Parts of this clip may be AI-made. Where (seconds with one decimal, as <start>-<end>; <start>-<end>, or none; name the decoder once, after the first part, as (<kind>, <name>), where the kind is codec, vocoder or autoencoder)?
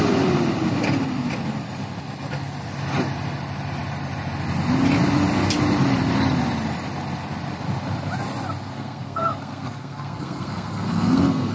8.7-11.5 (codec, SNAC)